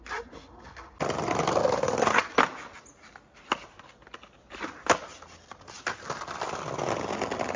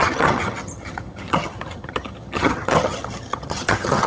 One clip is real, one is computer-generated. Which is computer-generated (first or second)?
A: second